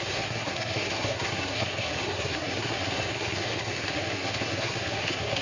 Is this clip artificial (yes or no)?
yes